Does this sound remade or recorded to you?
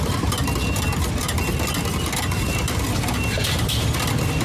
recorded